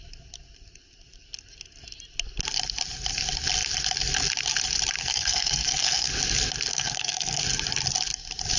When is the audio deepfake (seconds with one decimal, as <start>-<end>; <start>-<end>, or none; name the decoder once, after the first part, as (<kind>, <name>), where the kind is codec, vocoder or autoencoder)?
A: 5.0-6.1 (codec, SNAC); 6.7-7.4